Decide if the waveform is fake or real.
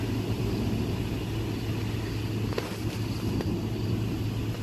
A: real